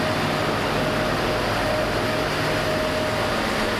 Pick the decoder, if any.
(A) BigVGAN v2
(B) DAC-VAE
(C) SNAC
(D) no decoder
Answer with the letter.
D